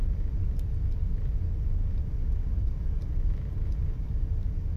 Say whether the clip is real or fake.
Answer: real